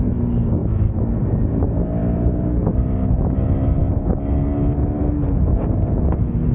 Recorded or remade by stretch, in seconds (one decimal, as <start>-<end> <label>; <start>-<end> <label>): 0.0-6.5 recorded